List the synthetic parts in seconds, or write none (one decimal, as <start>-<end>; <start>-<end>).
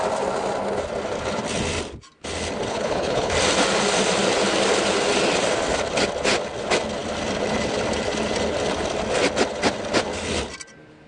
2.7-3.3